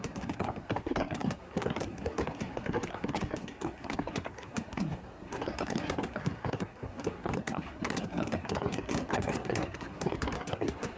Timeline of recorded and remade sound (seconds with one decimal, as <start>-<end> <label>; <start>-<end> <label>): 0.0-11.0 remade